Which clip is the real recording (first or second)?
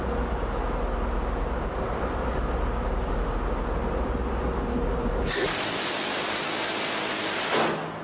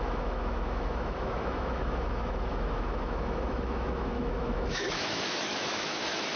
first